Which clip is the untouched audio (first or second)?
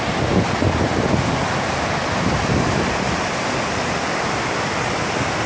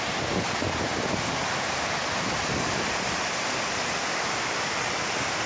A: first